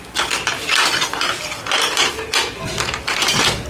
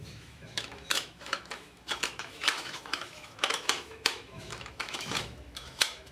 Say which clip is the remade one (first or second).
second